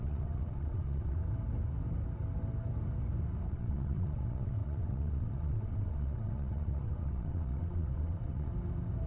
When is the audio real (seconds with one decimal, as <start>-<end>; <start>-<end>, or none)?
1.2-3.5; 8.5-9.1